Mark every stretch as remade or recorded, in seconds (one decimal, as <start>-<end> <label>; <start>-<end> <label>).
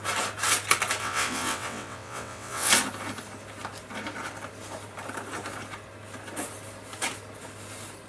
0.0-1.0 recorded; 1.0-2.7 remade; 2.7-8.1 recorded